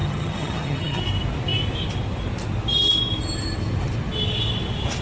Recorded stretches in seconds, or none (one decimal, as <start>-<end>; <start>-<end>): 1.0-5.0